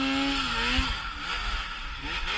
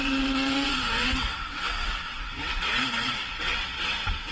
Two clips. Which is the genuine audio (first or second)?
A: first